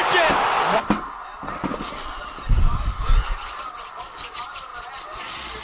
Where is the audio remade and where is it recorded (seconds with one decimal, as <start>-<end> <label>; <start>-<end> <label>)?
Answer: 0.0-5.6 recorded